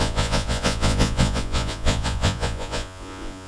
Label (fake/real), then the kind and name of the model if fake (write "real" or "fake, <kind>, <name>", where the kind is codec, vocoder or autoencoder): fake, vocoder, Vocos